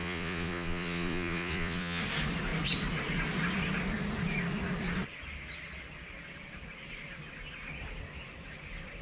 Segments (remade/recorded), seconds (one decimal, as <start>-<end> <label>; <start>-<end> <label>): 0.0-2.0 remade; 2.0-9.0 recorded